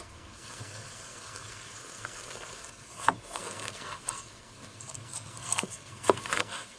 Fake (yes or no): yes